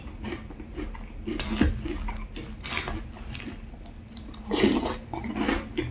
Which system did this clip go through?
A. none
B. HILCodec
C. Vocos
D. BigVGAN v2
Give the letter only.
A